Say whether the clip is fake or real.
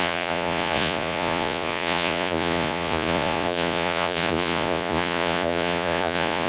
fake